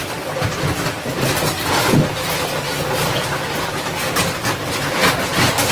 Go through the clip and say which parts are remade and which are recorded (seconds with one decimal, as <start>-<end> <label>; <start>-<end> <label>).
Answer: 0.0-5.7 recorded

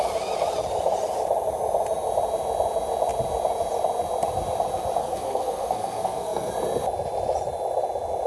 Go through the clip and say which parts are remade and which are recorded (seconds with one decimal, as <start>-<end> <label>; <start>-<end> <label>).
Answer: 0.0-5.0 recorded; 5.0-6.5 remade; 6.5-8.3 recorded

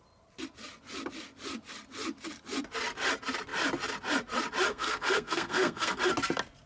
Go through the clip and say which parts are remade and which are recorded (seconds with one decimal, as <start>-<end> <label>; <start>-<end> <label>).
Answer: 0.0-4.7 recorded; 4.7-5.9 remade; 5.9-6.7 recorded

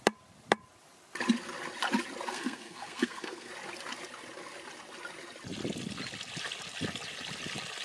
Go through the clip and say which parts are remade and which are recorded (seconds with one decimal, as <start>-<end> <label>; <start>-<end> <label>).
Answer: 0.0-2.3 recorded; 2.3-3.5 remade; 3.5-7.8 recorded

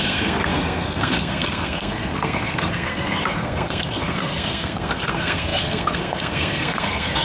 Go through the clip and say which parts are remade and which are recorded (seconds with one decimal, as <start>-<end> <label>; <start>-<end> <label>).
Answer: 0.0-7.2 remade

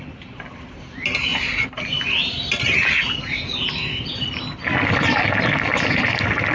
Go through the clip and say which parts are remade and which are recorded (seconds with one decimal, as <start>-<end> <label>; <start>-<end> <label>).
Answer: 0.0-6.5 recorded

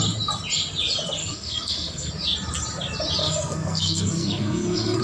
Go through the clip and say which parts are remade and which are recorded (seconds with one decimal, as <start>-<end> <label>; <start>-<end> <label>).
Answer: 0.0-1.2 recorded; 1.2-2.1 remade; 2.1-3.2 recorded; 3.2-5.0 remade

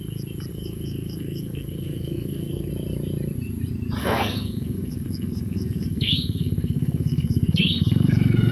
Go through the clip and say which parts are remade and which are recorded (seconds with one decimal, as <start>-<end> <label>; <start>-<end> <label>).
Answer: 0.0-0.5 recorded; 0.5-2.7 remade; 2.7-4.0 recorded; 4.0-8.5 remade